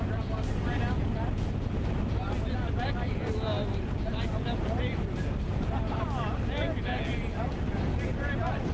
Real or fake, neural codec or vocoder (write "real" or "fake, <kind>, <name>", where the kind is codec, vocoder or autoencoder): real